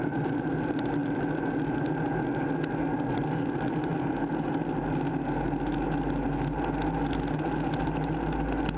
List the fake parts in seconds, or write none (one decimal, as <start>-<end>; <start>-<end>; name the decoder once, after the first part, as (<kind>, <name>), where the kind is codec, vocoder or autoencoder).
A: none